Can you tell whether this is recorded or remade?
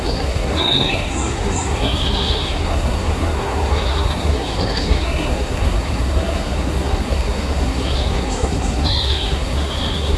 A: remade